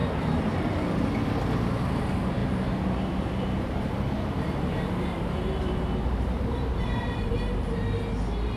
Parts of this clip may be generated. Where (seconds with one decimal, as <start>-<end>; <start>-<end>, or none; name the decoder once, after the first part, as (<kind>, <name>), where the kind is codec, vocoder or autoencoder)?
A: 0.0-0.8 (vocoder, BigVGAN v2); 2.4-7.3